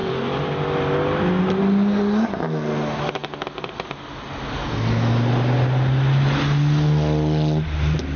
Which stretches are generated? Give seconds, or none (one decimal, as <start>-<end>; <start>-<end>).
none